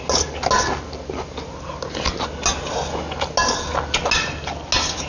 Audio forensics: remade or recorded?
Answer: recorded